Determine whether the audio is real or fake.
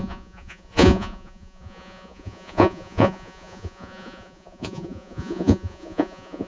fake